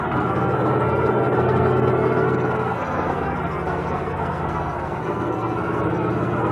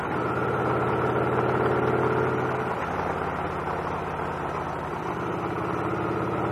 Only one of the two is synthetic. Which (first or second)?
first